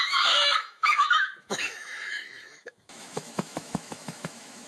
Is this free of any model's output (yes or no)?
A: no